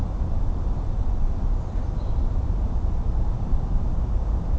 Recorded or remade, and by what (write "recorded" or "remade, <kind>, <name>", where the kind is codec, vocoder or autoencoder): recorded